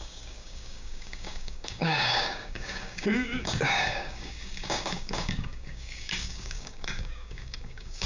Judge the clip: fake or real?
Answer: fake